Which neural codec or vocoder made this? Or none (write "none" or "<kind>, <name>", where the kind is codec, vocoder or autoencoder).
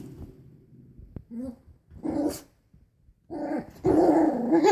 none